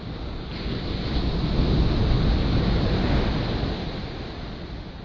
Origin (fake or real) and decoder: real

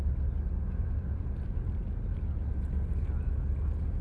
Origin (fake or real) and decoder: real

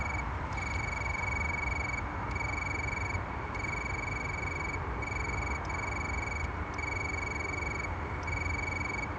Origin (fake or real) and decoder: real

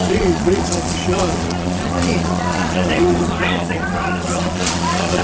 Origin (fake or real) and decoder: fake, vocoder, Vocos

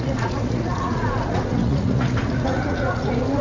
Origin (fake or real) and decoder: fake, vocoder, Vocos